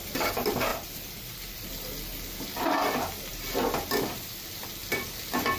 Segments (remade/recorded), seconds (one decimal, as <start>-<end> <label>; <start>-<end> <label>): 0.0-0.7 recorded; 0.7-1.7 remade; 1.7-5.6 recorded